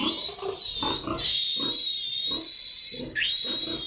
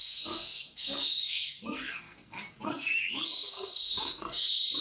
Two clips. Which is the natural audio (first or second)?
first